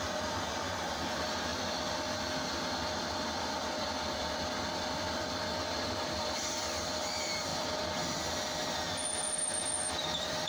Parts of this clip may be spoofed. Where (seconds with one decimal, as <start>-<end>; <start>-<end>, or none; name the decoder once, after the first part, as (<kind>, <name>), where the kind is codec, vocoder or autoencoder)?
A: none